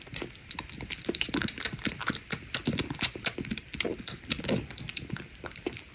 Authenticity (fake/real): fake